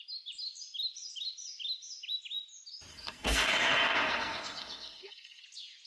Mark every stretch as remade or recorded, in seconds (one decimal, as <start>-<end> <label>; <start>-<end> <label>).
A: 0.0-2.9 recorded; 2.9-5.4 remade; 5.4-5.9 recorded